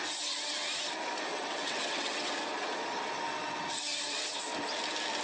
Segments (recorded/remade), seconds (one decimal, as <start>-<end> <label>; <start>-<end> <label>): 0.0-1.3 recorded; 1.3-2.3 remade; 2.3-5.2 recorded